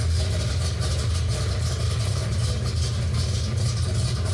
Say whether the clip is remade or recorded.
recorded